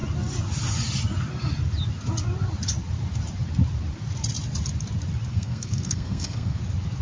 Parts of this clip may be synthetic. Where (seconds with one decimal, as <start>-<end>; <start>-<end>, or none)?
5.3-6.6

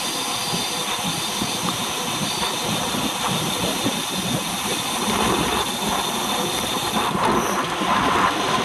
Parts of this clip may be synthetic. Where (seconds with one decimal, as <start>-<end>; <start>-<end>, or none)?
none

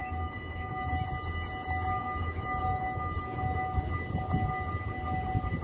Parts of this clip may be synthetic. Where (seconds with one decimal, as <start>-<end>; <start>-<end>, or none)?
0.0-0.9; 2.0-3.9

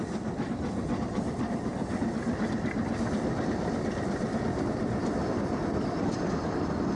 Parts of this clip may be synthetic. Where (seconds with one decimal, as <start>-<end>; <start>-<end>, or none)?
none

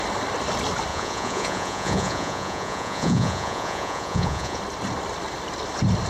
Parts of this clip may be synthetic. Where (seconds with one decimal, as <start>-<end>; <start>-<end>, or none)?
0.9-4.6

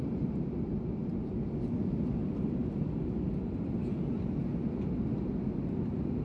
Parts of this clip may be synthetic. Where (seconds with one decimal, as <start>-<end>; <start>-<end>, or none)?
none

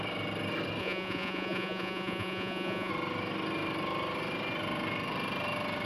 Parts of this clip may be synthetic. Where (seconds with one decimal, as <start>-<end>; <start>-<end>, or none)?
0.8-2.9

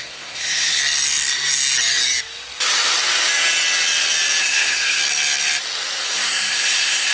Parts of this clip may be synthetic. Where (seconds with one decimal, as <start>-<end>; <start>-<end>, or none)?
0.0-0.8; 4.4-5.0; 6.0-7.1